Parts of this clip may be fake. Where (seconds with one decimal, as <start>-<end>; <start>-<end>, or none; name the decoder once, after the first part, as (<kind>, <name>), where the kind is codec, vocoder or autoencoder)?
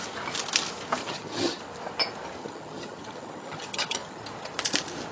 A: 1.0-1.6 (vocoder, HiFi-GAN); 2.4-4.2